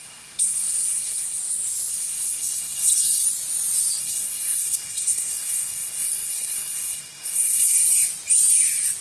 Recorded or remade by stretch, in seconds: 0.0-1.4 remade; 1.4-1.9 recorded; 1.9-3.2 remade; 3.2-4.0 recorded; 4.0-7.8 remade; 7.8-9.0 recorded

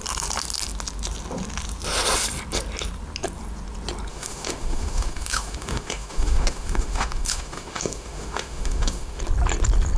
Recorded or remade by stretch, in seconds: 0.0-4.1 recorded; 4.1-9.2 remade; 9.2-10.0 recorded

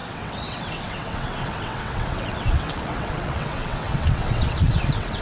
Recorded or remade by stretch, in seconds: 0.0-5.2 remade

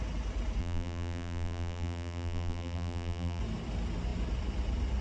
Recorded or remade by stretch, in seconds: 0.0-0.6 recorded; 0.6-3.4 remade; 3.4-5.0 recorded

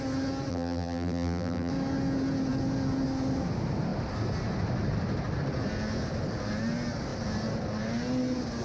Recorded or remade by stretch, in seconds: 0.0-0.5 recorded; 0.5-1.7 remade; 1.7-8.6 recorded